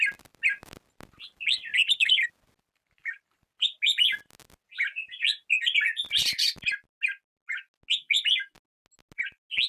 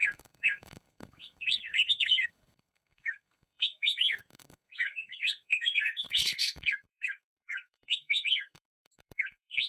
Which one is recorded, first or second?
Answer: first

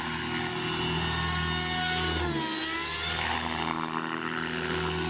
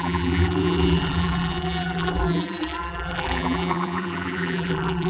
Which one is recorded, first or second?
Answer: first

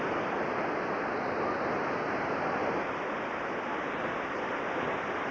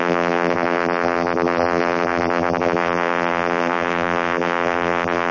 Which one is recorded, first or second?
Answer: first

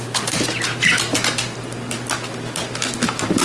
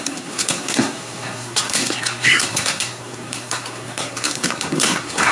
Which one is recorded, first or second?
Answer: first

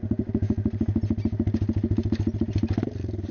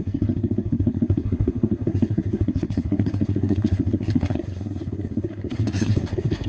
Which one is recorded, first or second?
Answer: first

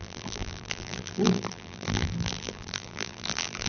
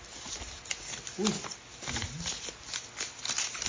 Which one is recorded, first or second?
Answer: second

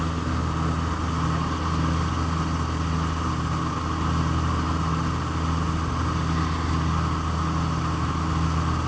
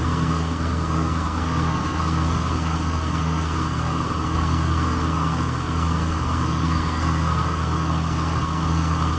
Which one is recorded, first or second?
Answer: first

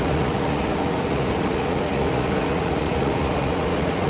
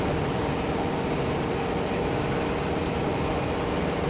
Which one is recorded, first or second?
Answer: second